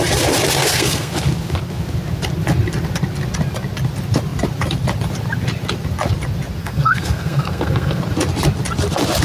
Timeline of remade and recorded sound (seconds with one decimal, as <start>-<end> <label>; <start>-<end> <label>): 0.0-0.6 recorded; 0.6-1.1 remade; 1.1-6.6 recorded; 6.6-8.0 remade; 8.0-9.2 recorded